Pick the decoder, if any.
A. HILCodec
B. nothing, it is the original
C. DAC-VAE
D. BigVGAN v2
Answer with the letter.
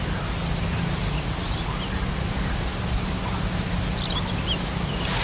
B